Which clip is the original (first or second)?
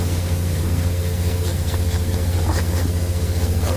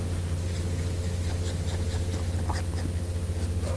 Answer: second